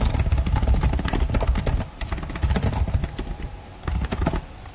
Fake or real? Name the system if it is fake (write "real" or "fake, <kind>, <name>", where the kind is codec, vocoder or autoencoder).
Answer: real